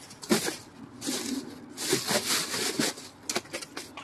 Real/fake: real